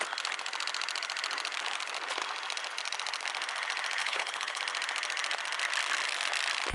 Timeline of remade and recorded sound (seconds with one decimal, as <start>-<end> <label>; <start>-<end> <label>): 0.0-4.0 recorded; 4.0-4.6 remade; 4.6-6.7 recorded